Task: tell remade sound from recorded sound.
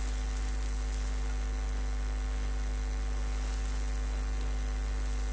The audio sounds recorded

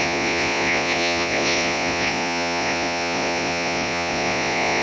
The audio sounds remade